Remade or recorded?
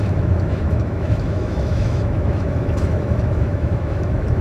remade